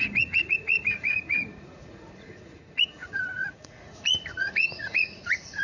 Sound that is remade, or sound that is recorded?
remade